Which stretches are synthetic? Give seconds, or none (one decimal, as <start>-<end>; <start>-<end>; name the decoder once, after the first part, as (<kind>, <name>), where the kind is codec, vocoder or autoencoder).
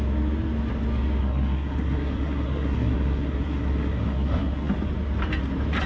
1.2-4.7 (codec, SNAC)